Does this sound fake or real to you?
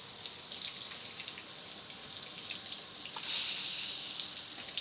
real